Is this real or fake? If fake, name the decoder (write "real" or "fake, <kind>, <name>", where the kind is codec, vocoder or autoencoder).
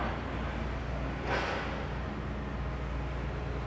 real